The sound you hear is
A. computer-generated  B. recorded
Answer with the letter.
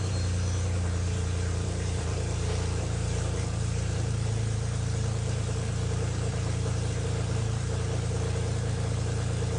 A